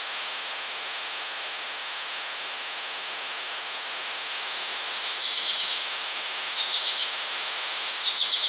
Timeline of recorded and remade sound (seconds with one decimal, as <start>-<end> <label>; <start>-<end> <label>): 0.0-8.5 remade